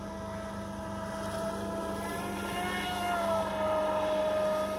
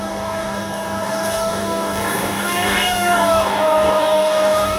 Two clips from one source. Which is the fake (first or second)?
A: second